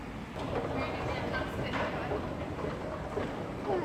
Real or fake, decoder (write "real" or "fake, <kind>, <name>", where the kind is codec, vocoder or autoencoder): real